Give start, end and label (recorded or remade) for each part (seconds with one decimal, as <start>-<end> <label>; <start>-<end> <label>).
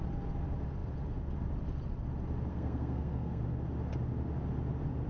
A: 0.0-2.5 recorded; 2.5-3.4 remade; 3.4-5.1 recorded